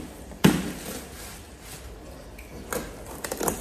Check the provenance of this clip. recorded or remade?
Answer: recorded